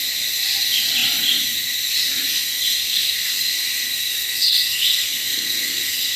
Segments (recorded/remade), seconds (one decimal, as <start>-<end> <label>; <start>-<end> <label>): 0.0-2.3 recorded; 2.3-6.2 remade